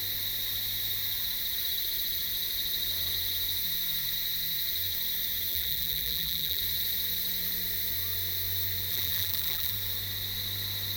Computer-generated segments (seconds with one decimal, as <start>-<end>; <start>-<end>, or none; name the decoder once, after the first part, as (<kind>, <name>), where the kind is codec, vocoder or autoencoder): 5.5-6.6 (vocoder, BigVGAN v2); 8.9-9.7